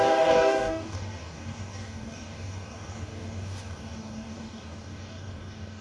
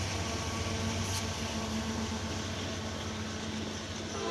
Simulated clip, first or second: first